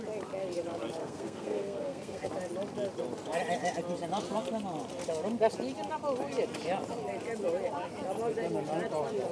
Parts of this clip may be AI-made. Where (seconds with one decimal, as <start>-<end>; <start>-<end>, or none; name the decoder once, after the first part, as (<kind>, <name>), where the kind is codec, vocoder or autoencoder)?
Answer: 1.0-2.3 (codec, SNAC)